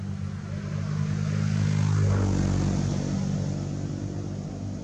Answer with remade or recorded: recorded